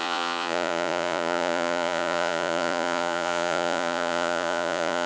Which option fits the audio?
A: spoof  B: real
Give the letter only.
A